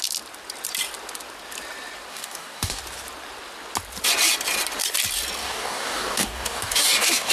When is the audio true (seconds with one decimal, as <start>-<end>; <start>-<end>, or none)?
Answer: 0.0-2.1; 2.8-5.4